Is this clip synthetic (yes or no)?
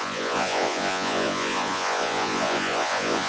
yes